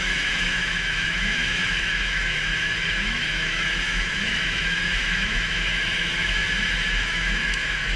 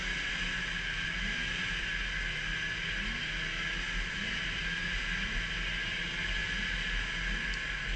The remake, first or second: first